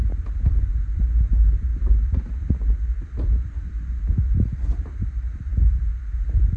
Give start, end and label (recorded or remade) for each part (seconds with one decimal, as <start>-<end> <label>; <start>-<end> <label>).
0.0-6.6 remade

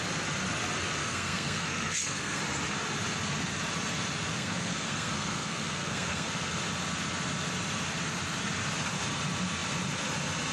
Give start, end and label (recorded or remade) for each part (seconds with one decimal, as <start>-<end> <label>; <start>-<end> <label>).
0.0-1.0 recorded; 1.0-2.4 remade; 2.4-4.3 recorded; 4.3-6.6 remade; 6.6-10.5 recorded

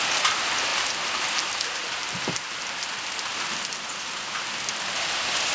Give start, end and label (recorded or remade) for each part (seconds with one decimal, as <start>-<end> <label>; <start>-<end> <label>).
0.0-5.5 recorded

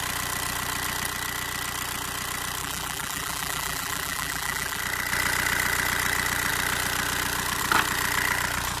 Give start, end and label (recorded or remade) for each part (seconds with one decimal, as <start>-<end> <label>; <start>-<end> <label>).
0.0-2.6 recorded; 2.6-4.8 remade; 4.8-8.8 recorded